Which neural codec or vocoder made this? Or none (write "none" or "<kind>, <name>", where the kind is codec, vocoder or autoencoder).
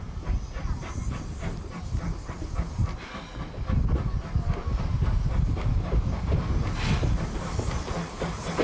none